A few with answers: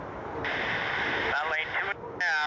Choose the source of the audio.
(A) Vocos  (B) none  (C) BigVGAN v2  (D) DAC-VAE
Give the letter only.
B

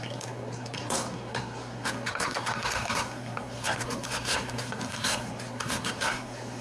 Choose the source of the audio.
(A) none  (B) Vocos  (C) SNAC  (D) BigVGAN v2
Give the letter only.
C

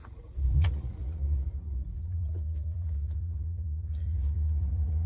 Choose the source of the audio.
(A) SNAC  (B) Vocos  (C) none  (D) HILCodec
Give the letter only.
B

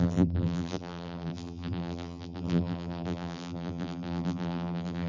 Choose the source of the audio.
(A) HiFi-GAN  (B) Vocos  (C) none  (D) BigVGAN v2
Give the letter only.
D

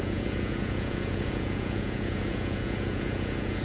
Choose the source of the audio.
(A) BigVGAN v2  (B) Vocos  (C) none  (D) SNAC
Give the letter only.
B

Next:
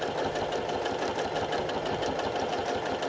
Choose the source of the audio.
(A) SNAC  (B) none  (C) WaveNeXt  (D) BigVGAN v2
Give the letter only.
B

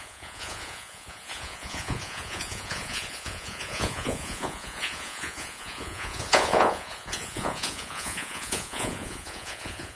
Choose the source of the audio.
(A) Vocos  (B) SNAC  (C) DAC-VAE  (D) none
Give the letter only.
A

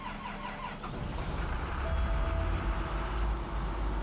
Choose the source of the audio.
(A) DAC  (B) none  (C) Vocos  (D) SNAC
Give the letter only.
B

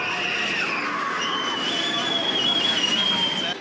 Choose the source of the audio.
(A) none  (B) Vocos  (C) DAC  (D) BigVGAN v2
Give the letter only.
A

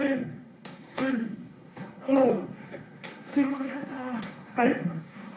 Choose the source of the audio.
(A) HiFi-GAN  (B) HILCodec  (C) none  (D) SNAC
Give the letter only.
D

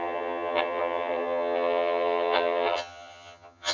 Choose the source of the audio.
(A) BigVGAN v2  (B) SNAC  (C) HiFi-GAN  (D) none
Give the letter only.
C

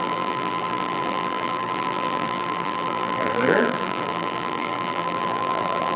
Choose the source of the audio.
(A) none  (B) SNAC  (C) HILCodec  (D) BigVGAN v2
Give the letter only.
D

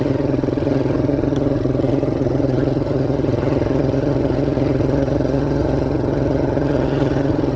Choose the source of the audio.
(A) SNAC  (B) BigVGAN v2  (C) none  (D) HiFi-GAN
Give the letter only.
D